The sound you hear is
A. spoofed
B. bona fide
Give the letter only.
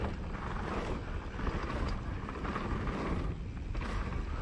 B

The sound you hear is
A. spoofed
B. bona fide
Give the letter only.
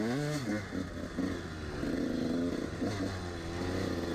B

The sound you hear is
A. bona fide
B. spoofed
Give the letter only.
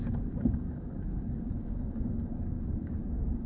B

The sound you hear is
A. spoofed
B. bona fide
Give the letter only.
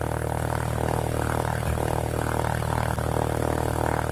B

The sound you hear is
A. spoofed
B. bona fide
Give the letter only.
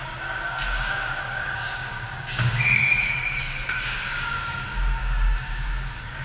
A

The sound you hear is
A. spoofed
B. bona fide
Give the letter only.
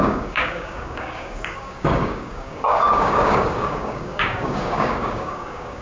A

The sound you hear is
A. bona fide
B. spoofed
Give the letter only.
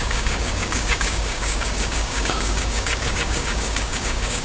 B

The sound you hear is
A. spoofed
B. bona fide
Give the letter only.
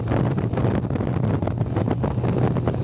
B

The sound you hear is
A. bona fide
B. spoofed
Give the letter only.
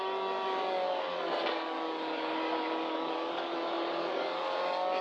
B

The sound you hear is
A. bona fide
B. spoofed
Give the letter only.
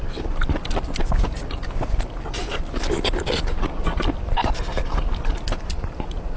A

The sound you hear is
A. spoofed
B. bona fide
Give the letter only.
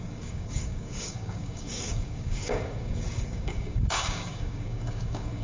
A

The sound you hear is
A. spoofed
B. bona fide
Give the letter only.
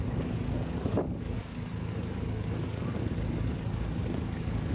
A